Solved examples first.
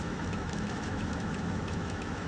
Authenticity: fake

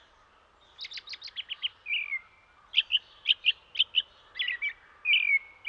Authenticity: real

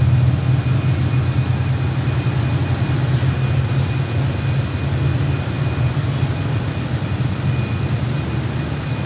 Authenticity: real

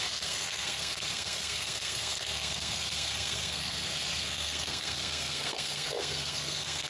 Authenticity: fake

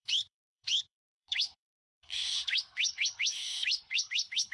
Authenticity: fake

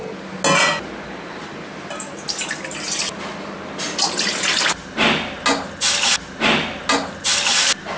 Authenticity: real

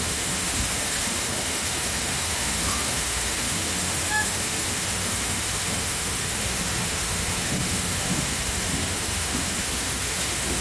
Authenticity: fake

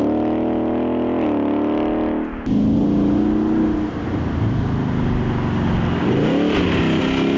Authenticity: real